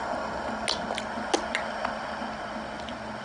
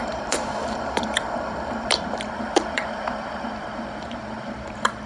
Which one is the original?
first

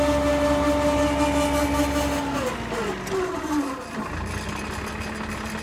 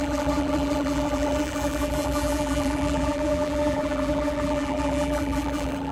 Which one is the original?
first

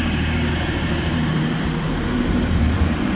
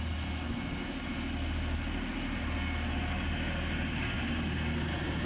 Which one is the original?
second